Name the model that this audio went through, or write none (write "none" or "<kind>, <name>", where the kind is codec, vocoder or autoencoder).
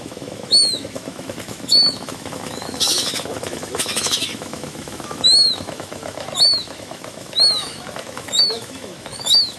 autoencoder, DAC-VAE